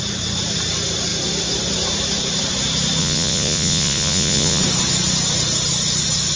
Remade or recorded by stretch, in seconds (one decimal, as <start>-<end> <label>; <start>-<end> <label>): 0.0-3.0 recorded; 3.0-4.6 remade; 4.6-6.4 recorded